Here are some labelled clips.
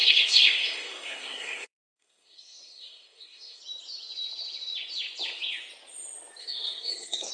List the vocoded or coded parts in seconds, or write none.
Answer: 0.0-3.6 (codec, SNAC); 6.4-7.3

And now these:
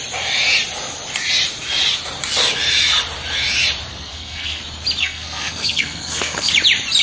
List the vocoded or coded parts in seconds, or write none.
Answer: 3.9-4.6 (codec, SNAC); 5.0-6.5